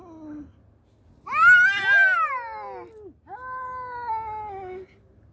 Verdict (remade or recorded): recorded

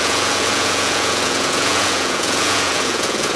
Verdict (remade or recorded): remade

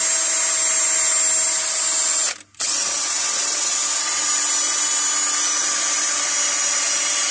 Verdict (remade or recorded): recorded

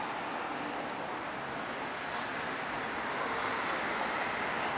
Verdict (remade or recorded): recorded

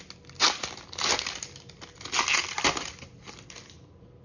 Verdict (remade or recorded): recorded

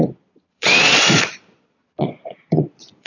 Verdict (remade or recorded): remade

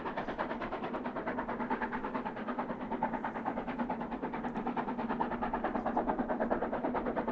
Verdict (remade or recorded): recorded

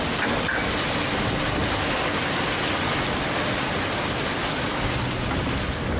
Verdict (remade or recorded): recorded